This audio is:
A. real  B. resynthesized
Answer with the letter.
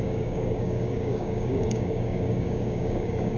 B